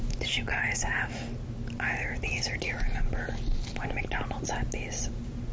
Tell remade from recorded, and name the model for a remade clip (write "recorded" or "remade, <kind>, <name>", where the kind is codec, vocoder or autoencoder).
recorded